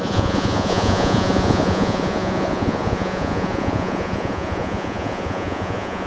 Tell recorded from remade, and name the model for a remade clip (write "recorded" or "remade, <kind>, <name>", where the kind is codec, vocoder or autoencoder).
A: remade, vocoder, Vocos